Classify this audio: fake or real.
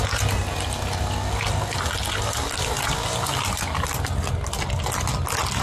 real